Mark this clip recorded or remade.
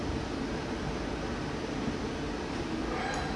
recorded